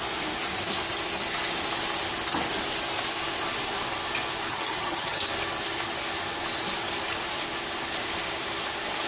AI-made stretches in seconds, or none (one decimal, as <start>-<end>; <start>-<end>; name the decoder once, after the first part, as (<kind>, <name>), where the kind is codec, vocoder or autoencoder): 4.5-5.2 (vocoder, HiFi-GAN)